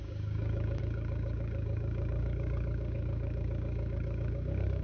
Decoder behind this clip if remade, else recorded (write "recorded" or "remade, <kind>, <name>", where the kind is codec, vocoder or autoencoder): remade, codec, DAC